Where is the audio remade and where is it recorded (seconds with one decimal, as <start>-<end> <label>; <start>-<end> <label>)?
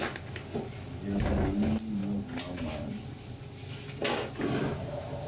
0.0-5.3 recorded